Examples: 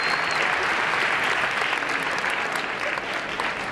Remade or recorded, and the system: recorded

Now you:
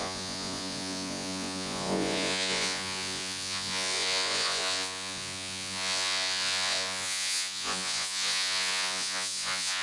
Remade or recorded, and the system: remade, vocoder, Vocos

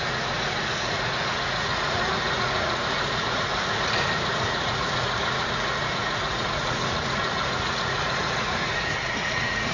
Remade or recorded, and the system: remade, vocoder, Vocos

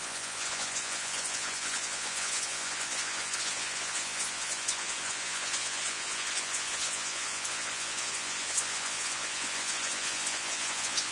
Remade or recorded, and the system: remade, vocoder, Vocos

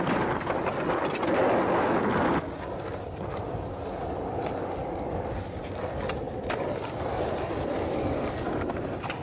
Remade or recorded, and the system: recorded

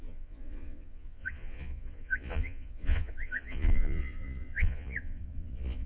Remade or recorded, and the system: remade, vocoder, Vocos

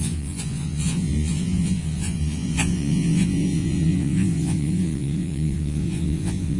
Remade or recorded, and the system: remade, vocoder, Vocos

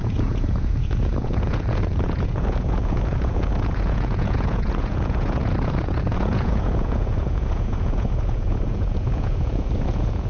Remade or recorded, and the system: remade, vocoder, Vocos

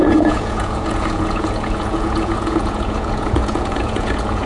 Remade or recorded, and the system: remade, vocoder, Vocos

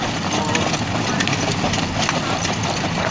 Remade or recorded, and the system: recorded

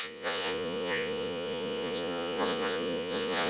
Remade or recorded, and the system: remade, vocoder, Vocos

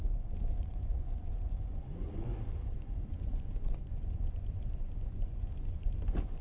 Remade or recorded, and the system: remade, vocoder, Vocos